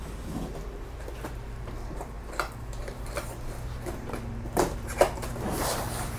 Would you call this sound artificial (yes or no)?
yes